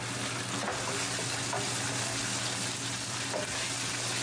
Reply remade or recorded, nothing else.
recorded